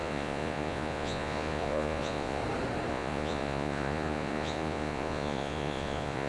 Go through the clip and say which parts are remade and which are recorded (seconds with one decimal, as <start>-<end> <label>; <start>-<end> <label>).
0.0-2.4 remade; 2.4-2.9 recorded; 2.9-6.3 remade